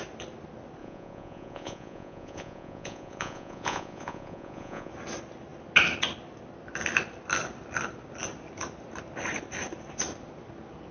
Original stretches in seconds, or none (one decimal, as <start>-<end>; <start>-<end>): 0.0-0.8; 4.9-10.9